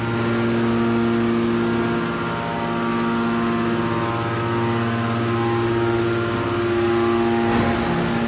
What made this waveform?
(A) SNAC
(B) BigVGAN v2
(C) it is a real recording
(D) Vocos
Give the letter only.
C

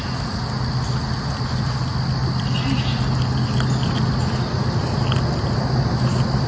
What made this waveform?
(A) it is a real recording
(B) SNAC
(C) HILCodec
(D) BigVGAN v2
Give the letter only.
A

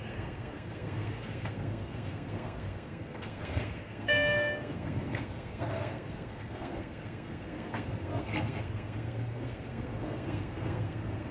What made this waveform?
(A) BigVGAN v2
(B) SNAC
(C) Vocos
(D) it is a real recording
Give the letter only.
B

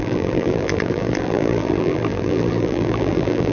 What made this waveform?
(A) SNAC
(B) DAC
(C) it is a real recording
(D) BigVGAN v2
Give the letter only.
D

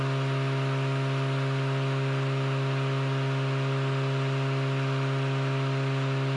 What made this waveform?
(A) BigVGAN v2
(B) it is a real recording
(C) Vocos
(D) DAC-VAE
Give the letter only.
B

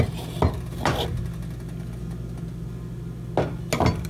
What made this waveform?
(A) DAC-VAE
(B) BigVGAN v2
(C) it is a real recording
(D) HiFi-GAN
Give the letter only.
C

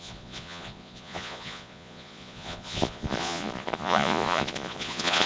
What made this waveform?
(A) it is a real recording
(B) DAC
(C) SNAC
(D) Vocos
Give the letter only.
D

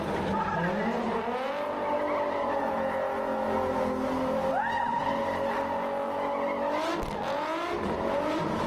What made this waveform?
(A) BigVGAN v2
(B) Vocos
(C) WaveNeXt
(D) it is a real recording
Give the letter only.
D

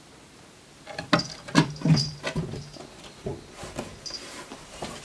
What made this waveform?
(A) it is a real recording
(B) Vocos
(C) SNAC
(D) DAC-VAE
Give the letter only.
A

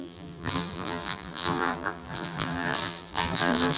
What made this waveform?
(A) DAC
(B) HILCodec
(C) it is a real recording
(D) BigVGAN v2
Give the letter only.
D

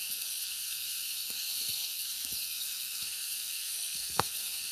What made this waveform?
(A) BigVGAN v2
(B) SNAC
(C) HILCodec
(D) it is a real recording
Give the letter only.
B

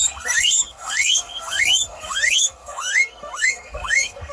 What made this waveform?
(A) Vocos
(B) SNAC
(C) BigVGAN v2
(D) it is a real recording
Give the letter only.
B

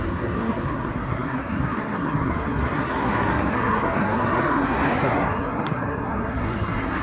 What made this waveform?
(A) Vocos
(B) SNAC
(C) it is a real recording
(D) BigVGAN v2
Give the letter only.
B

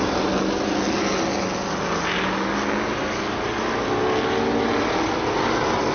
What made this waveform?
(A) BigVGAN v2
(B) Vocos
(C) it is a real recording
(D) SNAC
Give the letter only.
C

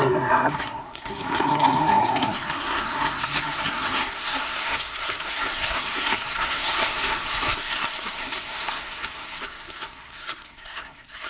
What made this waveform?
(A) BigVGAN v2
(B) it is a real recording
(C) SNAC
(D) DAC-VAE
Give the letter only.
C